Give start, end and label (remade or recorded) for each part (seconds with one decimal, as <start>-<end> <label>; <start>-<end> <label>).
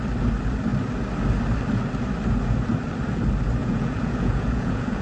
0.0-3.6 recorded; 3.6-5.0 remade